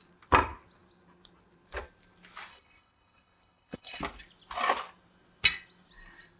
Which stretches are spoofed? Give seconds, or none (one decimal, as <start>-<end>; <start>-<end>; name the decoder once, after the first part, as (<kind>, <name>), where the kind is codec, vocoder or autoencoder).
2.5-4.0 (codec, HILCodec)